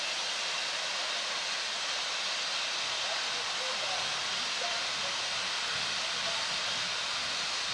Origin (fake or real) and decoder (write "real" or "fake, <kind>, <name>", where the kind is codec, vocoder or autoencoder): real